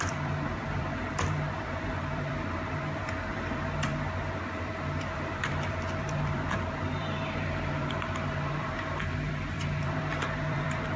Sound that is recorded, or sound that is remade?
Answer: remade